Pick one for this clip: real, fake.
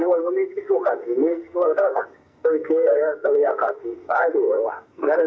fake